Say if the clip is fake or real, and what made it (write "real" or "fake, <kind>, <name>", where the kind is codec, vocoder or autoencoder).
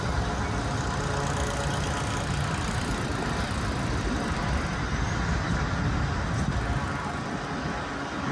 real